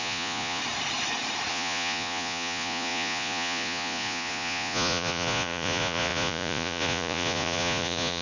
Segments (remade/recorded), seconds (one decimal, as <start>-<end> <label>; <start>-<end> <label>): 0.0-0.6 remade; 0.6-1.5 recorded; 1.5-8.2 remade